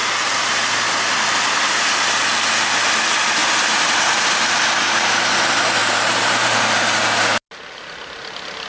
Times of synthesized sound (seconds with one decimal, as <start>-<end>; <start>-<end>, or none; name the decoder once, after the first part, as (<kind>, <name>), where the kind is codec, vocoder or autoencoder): 0.0-0.9 (vocoder, BigVGAN v2); 3.4-4.3; 5.8-6.6